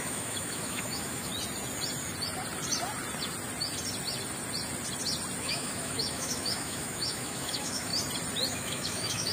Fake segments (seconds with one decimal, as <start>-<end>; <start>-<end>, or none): 0.0-1.3; 5.4-7.9; 8.5-9.3